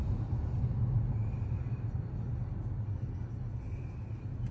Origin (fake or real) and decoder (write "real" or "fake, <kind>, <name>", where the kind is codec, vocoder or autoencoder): real